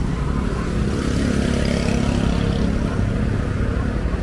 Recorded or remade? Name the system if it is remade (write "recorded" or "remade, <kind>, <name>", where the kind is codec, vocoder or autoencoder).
recorded